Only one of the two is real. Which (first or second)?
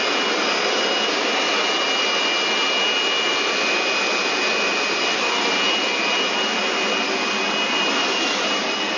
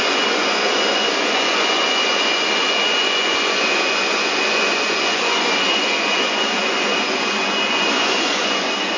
first